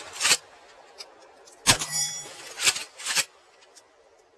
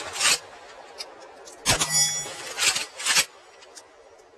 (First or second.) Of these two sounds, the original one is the second